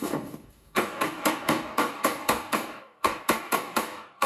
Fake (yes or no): yes